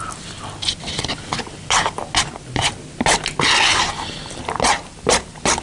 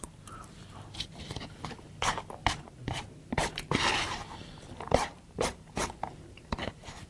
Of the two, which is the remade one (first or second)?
second